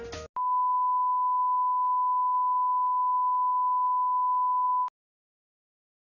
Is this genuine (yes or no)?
yes